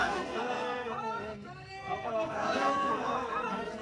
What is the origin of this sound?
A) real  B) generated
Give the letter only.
B